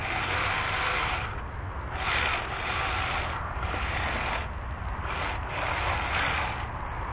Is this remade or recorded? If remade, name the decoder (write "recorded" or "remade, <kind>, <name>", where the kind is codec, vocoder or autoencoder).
recorded